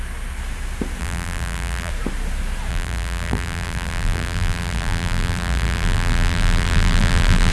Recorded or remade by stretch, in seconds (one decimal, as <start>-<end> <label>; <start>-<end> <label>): 0.0-1.0 recorded; 1.0-1.9 remade; 1.9-2.7 recorded; 2.7-7.5 remade